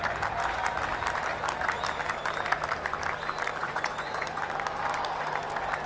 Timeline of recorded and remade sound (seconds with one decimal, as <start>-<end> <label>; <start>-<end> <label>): 0.0-3.6 recorded; 3.6-4.4 remade; 4.4-5.9 recorded